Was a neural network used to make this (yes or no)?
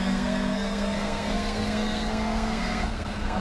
yes